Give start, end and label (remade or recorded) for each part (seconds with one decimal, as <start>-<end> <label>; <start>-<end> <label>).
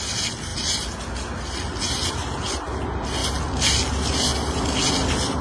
0.0-5.4 recorded